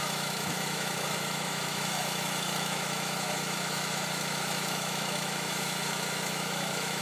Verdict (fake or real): fake